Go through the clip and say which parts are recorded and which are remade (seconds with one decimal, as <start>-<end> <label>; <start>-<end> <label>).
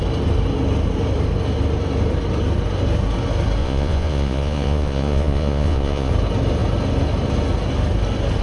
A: 0.0-3.6 recorded; 3.6-6.1 remade; 6.1-8.4 recorded